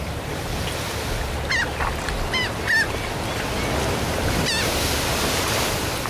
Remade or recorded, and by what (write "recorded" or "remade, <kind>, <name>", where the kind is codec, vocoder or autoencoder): recorded